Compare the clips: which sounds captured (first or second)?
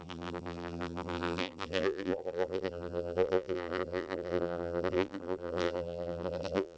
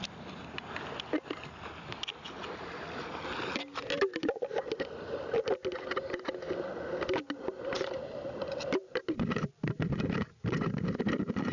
second